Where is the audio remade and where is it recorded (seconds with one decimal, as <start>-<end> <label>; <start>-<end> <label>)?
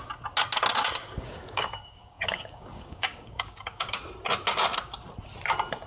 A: 0.0-1.0 recorded; 1.0-4.0 remade; 4.0-5.9 recorded